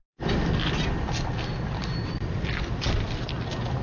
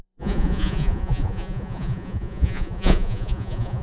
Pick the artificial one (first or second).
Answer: second